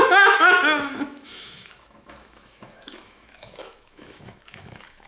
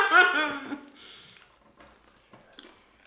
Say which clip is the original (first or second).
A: second